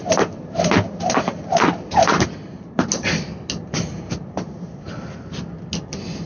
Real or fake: real